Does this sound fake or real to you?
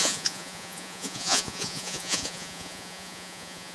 fake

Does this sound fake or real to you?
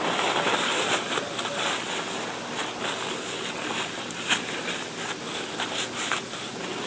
real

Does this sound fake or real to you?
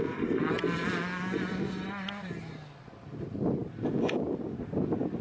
real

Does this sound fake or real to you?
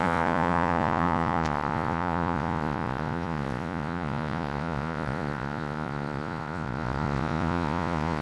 fake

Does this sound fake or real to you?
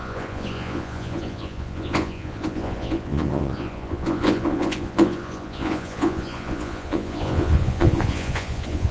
fake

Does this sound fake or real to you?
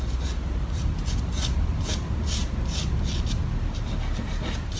real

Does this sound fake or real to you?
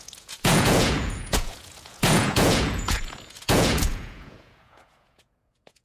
fake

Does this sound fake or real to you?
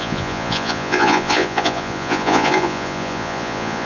fake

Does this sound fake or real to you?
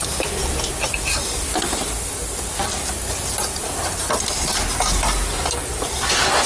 real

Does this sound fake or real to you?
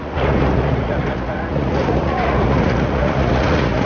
fake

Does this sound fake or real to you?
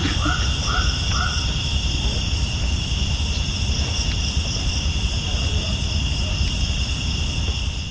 real